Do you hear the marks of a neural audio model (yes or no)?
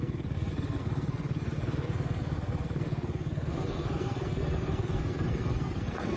yes